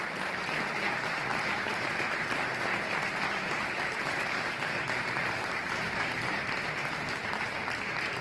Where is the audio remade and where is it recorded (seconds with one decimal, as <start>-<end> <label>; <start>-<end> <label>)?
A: 0.0-1.3 recorded; 1.3-1.9 remade; 1.9-3.1 recorded; 3.1-8.2 remade